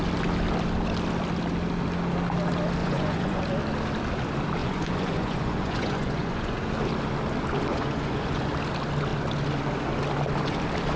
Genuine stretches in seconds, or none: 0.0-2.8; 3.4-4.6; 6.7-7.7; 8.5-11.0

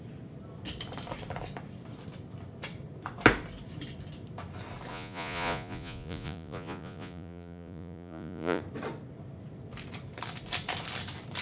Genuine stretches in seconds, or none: 0.0-4.9; 8.6-11.4

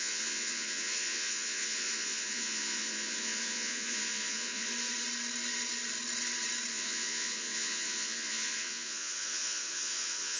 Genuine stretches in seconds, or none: 4.7-6.7

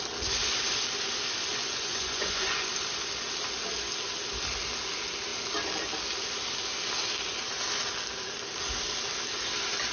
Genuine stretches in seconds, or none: 0.0-1.5; 2.7-9.9

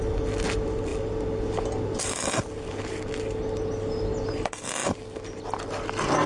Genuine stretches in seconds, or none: 0.0-6.3

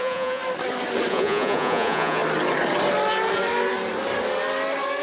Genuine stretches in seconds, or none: 0.4-1.1; 2.2-5.0